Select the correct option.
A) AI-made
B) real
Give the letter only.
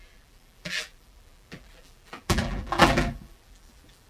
A